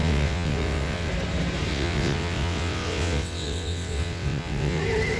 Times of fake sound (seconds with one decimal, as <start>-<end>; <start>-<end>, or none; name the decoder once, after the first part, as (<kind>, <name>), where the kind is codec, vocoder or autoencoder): 0.0-1.1 (vocoder, WaveNeXt); 1.7-4.8